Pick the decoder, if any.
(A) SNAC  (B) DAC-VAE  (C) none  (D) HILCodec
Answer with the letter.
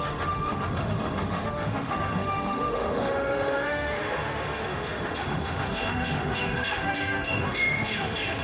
B